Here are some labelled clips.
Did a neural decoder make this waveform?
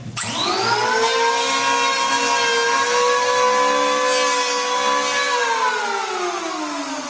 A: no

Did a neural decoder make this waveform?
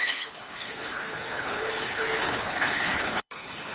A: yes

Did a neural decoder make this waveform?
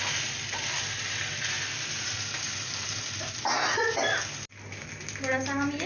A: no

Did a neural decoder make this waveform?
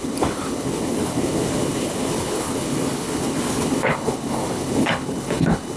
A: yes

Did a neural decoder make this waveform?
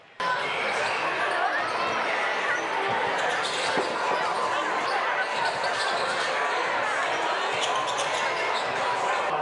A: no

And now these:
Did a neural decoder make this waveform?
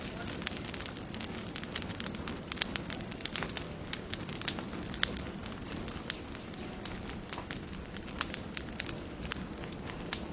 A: no